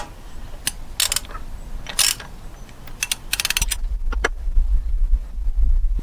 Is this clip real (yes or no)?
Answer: yes